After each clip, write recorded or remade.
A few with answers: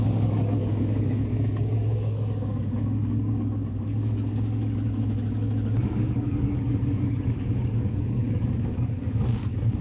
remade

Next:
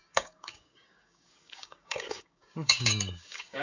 remade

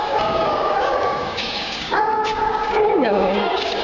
remade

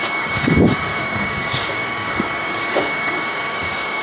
remade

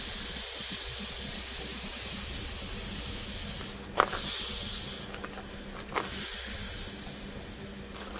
recorded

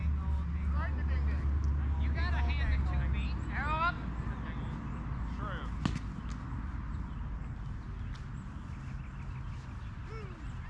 recorded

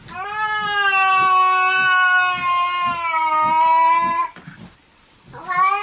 recorded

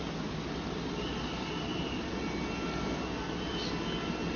recorded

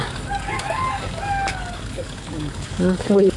remade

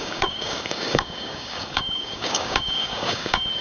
remade